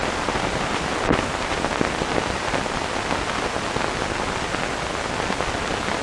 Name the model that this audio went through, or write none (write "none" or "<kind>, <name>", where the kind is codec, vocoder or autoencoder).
none